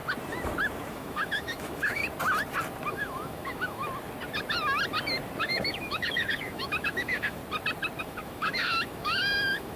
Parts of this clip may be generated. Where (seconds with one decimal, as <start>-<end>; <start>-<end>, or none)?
0.9-2.0; 2.9-3.8; 5.4-7.4; 8.0-9.8